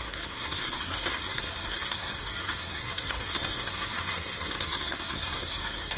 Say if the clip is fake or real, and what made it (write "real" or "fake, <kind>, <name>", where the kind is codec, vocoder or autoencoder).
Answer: fake, codec, SNAC